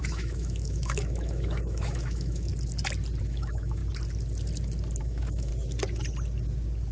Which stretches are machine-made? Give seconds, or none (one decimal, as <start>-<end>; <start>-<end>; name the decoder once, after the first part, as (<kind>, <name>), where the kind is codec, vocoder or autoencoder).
0.0-2.5 (autoencoder, DAC-VAE); 3.2-3.8; 5.0-5.5